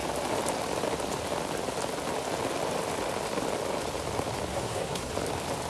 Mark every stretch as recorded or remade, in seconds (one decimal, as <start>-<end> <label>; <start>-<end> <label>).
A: 0.0-4.5 recorded; 4.5-5.1 remade; 5.1-5.7 recorded